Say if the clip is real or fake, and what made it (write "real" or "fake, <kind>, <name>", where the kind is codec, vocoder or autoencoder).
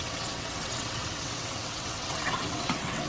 fake, vocoder, WaveNeXt